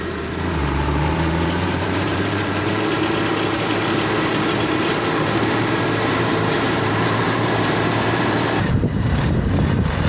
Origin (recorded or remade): remade